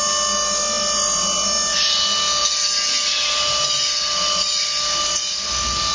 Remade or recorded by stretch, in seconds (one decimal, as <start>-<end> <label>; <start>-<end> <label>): 0.0-5.9 recorded